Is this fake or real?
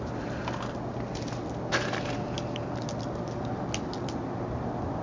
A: real